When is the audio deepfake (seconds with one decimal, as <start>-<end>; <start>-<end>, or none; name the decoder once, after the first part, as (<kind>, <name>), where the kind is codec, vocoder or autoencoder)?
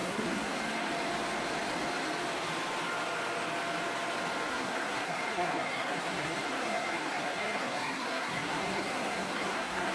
0.0-0.6 (codec, SNAC); 4.5-9.9